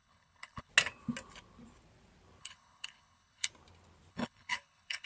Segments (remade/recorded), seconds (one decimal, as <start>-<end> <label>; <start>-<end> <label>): 0.0-0.7 remade; 0.7-2.4 recorded; 2.4-3.5 remade; 3.5-4.1 recorded; 4.1-5.1 remade